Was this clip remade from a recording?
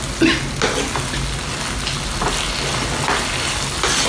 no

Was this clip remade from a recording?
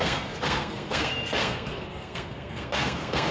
yes